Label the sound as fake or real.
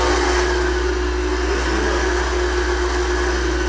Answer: real